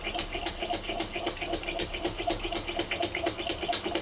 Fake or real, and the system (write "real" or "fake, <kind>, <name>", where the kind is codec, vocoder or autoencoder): real